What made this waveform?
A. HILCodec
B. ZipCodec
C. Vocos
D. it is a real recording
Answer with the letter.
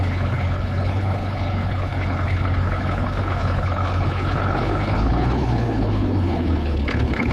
A